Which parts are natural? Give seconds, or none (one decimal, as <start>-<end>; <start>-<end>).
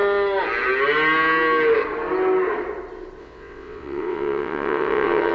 0.0-3.2